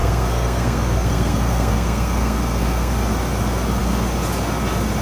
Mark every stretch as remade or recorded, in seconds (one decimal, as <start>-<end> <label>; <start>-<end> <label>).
0.0-2.9 remade; 2.9-5.0 recorded